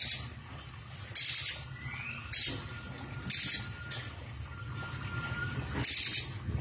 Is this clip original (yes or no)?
yes